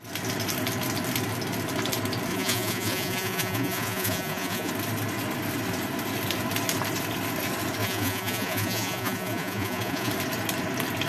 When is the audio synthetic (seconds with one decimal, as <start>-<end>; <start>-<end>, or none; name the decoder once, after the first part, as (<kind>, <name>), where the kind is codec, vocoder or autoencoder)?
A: 2.3-4.7 (vocoder, Vocos); 7.8-10.1